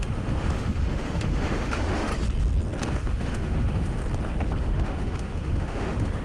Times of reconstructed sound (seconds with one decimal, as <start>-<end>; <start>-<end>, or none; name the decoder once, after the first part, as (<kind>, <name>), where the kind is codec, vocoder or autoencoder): 0.0-2.1 (autoencoder, DAC-VAE); 2.9-4.0; 4.6-6.2